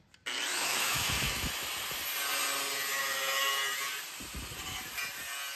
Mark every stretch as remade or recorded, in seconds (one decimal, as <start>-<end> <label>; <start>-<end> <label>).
0.0-0.5 recorded; 0.5-1.5 remade; 1.5-2.9 recorded; 2.9-3.5 remade; 3.5-5.6 recorded